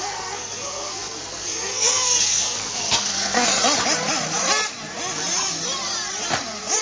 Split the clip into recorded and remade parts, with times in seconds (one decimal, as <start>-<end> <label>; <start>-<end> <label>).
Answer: 0.0-3.5 remade; 3.5-6.8 recorded